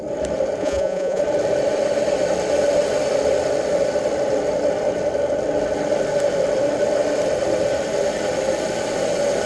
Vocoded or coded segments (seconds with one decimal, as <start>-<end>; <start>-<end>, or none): 0.6-1.2